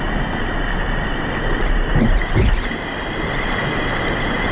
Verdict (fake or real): real